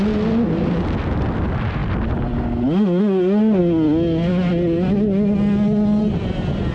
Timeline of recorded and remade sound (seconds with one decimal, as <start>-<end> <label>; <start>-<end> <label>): 0.0-6.7 recorded